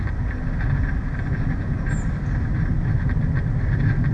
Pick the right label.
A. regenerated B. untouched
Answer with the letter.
B